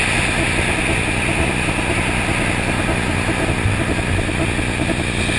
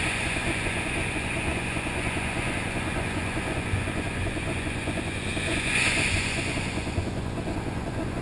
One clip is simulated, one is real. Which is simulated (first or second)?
second